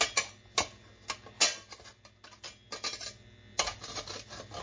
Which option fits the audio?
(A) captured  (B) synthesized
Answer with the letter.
A